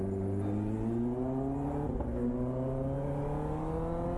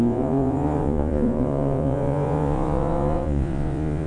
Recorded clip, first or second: first